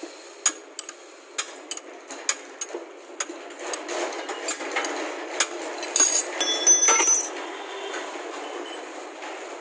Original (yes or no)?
yes